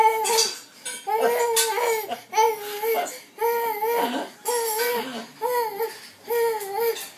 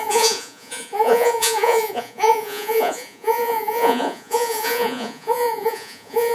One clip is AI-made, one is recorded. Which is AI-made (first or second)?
second